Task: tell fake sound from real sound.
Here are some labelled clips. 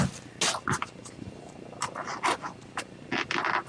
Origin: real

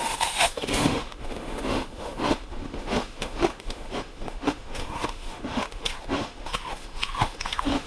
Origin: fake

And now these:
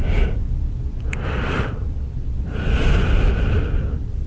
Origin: real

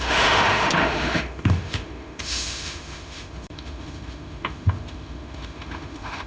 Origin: fake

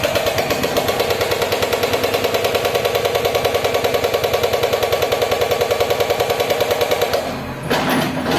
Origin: real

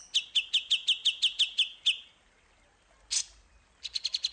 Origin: real